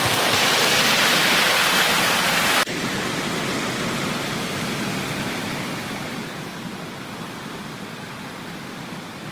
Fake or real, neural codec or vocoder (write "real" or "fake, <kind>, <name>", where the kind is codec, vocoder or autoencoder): real